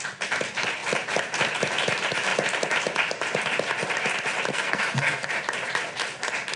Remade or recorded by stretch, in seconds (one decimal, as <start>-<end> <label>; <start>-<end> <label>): 0.0-4.5 recorded; 4.5-5.3 remade; 5.3-6.6 recorded